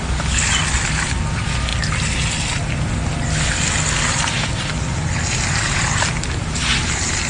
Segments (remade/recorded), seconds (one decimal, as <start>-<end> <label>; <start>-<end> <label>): 0.0-7.3 recorded